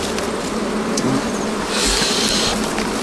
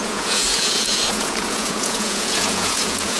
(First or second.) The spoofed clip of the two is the second